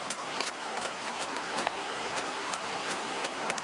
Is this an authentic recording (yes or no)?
no